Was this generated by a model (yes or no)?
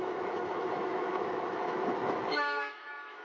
yes